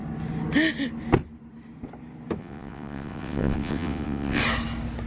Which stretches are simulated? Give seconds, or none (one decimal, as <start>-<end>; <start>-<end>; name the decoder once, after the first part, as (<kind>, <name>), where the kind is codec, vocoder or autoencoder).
2.4-4.4 (vocoder, WaveNeXt)